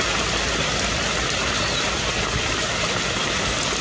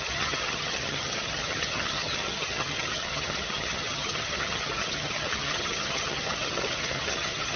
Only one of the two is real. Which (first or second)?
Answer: first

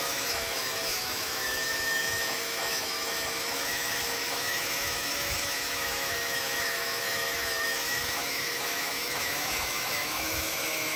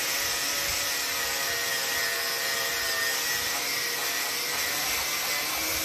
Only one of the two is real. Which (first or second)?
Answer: second